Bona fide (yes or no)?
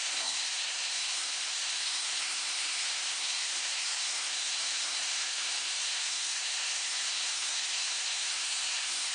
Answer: no